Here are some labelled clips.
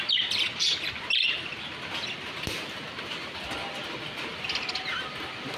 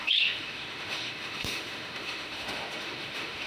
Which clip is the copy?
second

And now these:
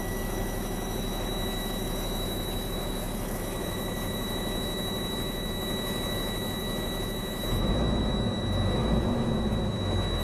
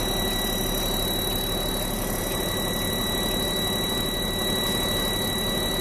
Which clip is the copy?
first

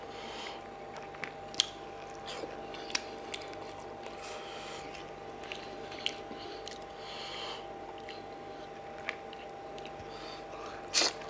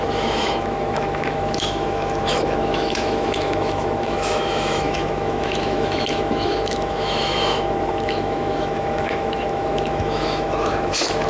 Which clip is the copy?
second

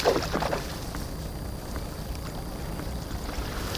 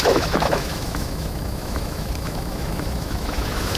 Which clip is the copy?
second